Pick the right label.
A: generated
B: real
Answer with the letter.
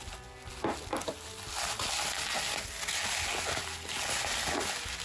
B